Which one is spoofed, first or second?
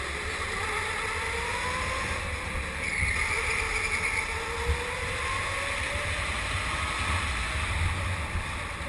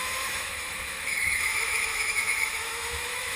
second